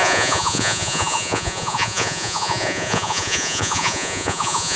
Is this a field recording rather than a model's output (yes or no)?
no